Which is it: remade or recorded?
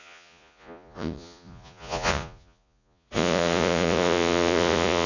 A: remade